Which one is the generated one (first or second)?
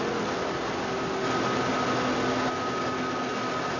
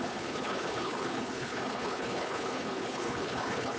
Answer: second